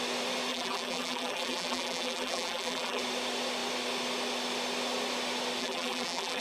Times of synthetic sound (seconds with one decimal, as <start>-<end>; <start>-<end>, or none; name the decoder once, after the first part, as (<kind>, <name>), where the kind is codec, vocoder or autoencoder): 0.5-3.0 (vocoder, BigVGAN v2); 5.6-6.4